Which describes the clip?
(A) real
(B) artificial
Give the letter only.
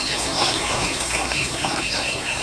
B